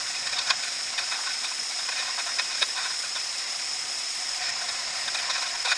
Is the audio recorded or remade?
remade